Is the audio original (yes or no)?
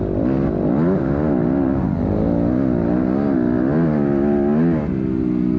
yes